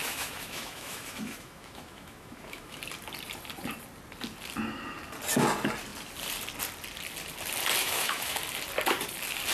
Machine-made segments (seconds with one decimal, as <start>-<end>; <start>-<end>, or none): 0.0-2.8; 7.8-8.4